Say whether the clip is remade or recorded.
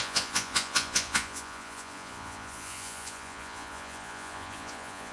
remade